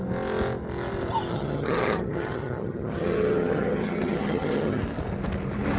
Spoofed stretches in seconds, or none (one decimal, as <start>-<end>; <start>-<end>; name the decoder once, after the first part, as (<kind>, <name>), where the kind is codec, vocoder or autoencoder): 1.3-4.8 (vocoder, HiFi-GAN)